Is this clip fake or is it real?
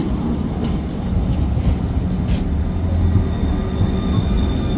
real